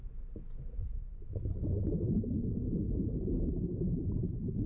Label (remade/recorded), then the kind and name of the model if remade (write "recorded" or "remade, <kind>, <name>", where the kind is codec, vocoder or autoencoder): recorded